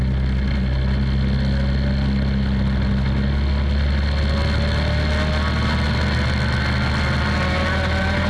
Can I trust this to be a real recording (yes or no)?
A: yes